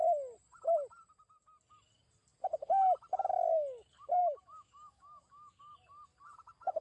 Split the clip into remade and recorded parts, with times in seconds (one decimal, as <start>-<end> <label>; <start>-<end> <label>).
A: 0.0-4.2 recorded; 4.2-5.6 remade; 5.6-6.8 recorded